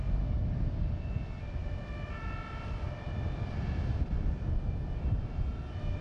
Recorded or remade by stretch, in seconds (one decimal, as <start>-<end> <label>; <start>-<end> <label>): 0.0-1.0 remade; 1.0-1.6 recorded; 1.6-4.5 remade; 4.5-6.0 recorded